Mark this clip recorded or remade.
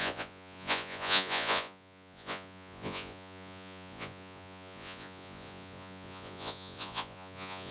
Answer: remade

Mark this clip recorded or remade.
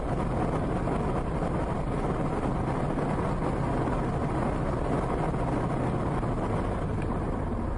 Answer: recorded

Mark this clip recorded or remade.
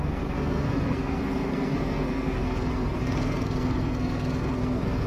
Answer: remade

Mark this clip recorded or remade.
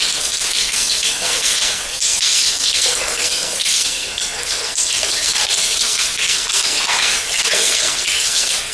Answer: remade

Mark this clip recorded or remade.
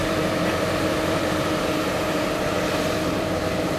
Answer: remade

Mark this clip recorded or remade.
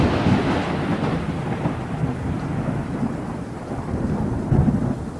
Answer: recorded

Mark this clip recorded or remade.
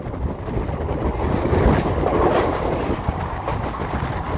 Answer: recorded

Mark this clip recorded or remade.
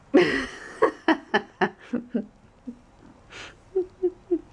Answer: recorded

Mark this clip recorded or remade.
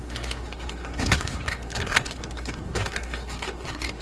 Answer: remade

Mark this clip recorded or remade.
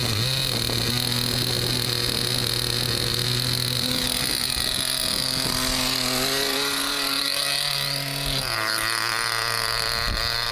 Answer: recorded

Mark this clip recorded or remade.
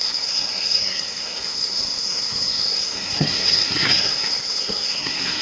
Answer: remade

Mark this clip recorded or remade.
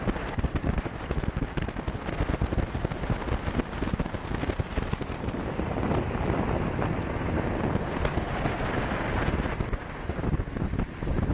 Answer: recorded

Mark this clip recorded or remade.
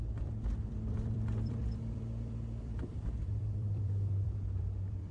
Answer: remade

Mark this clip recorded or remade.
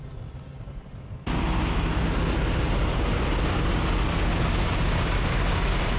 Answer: recorded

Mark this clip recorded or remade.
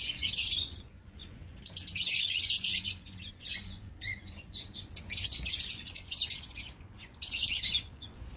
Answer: remade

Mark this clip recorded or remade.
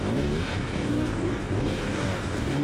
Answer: remade